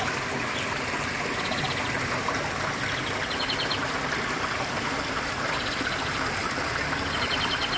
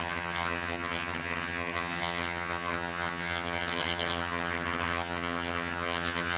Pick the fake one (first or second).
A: second